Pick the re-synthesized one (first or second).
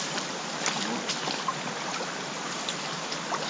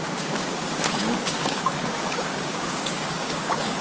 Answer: second